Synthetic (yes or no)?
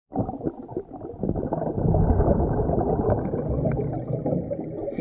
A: no